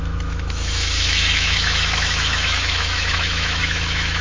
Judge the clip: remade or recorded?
remade